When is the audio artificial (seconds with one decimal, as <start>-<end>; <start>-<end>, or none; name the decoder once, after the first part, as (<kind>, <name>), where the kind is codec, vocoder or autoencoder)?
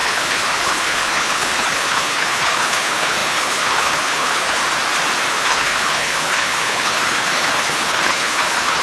0.0-4.6 (codec, HILCodec); 5.3-8.8